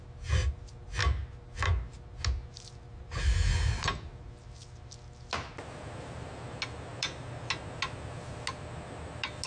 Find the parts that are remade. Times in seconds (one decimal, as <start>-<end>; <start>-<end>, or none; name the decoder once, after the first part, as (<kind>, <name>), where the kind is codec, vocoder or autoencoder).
none